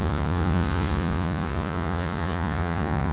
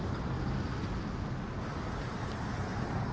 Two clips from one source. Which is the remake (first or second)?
first